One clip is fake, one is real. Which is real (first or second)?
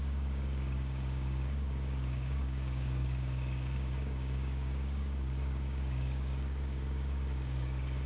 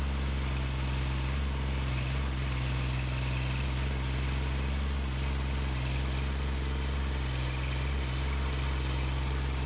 second